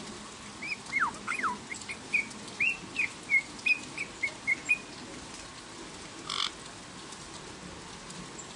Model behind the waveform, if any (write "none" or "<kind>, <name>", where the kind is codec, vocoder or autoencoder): none